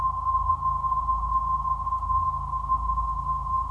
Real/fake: real